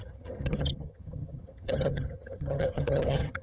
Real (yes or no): no